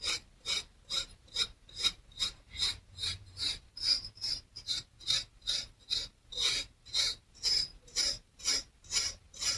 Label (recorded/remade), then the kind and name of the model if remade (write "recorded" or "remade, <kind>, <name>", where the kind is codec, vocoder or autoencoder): remade, vocoder, BigVGAN v2